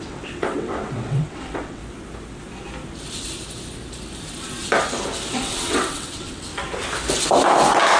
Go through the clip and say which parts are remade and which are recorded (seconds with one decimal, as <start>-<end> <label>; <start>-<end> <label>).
0.0-1.8 remade; 1.8-5.3 recorded; 5.3-6.5 remade; 6.5-8.0 recorded